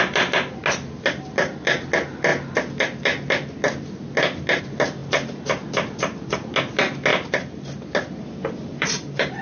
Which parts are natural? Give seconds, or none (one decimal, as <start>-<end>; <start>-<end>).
0.0-8.7